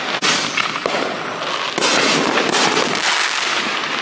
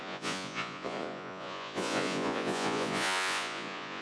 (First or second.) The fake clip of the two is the second